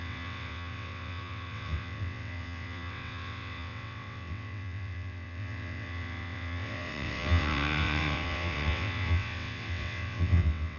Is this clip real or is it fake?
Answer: fake